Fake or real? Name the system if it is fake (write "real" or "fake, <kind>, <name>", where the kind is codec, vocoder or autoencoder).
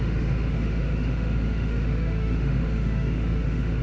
fake, autoencoder, DAC-VAE